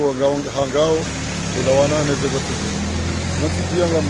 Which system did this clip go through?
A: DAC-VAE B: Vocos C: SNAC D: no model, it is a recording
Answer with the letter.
D